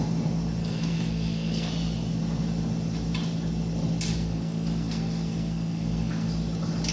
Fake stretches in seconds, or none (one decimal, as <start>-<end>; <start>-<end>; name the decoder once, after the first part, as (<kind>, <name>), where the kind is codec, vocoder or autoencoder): 0.6-1.7 (codec, SNAC); 4.1-6.3